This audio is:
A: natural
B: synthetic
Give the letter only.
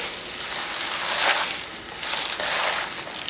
A